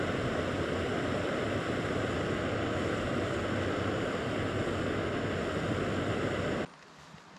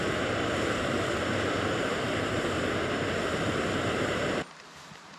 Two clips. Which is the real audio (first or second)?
first